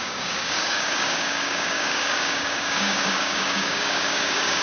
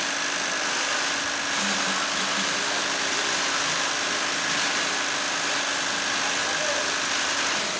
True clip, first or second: second